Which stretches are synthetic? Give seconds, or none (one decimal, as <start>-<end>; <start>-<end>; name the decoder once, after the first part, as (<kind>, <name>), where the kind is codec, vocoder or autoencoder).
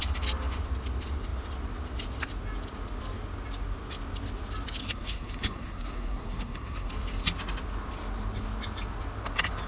4.8-6.9 (codec, SNAC)